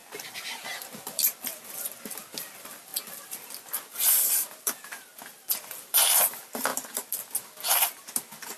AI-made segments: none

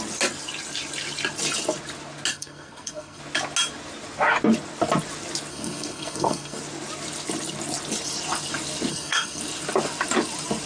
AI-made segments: 2.3-3.2 (codec, SNAC); 5.5-6.6; 8.9-9.4